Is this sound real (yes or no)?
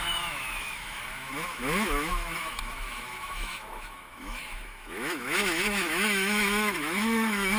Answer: no